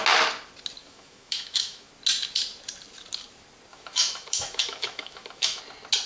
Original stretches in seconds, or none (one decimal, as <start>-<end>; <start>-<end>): 0.0-0.8; 1.9-3.7; 5.6-6.1